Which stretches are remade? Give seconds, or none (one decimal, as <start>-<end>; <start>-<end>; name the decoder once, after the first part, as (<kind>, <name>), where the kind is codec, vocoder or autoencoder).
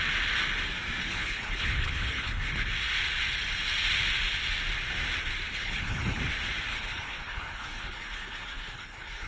1.0-2.7 (codec, HILCodec); 5.5-6.2; 6.7-9.3